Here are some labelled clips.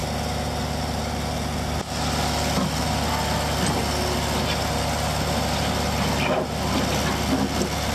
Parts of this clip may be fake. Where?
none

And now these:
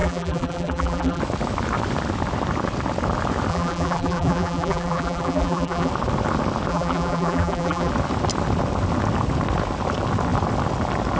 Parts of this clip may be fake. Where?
0.0-1.2; 3.5-5.9; 6.7-7.9

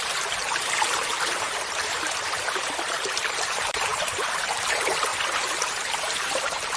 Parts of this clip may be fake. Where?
0.0-5.1; 5.7-6.8

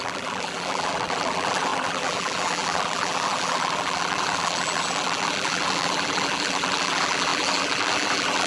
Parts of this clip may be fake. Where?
0.0-8.5

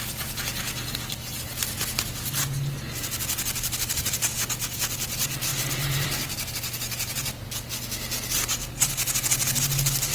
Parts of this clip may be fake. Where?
5.5-6.5

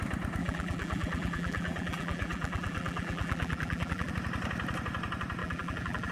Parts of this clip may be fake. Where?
0.4-4.1; 5.4-6.1

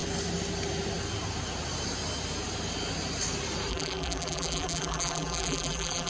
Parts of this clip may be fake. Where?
3.7-6.1